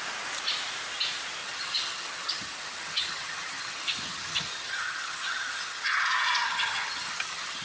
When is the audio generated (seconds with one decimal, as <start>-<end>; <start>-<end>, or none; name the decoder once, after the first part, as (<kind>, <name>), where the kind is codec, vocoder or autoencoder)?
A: 1.4-6.0 (vocoder, HiFi-GAN); 6.4-7.6